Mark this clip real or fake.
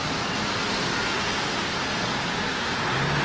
real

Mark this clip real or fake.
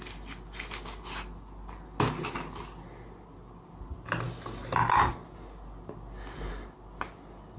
real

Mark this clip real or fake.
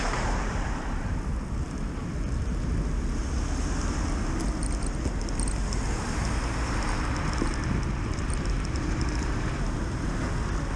real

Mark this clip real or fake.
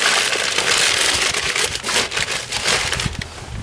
real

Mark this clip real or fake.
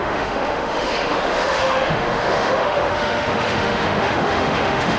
fake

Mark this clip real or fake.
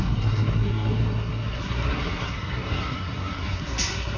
fake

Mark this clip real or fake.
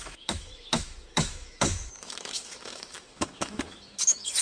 fake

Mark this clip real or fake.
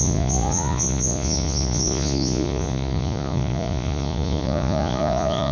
fake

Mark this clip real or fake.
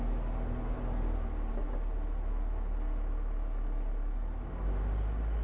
real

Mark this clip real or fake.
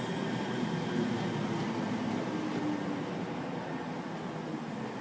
real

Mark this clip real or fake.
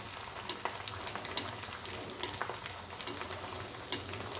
real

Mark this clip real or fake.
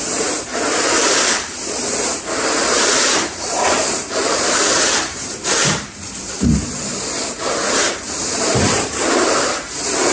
fake